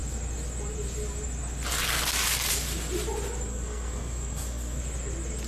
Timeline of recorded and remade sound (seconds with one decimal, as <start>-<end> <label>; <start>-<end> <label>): 0.0-3.5 recorded; 3.5-4.8 remade; 4.8-5.5 recorded